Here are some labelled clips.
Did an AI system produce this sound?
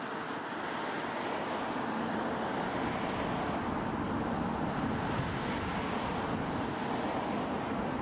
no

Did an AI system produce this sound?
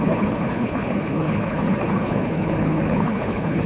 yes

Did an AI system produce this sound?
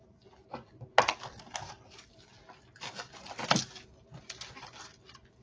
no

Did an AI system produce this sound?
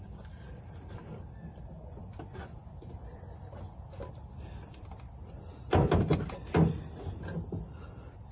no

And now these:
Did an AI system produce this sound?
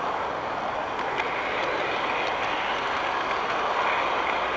no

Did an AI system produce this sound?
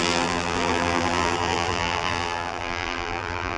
yes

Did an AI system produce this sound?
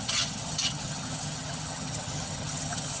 yes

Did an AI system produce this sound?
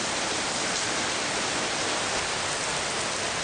no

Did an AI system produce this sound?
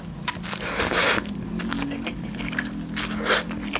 no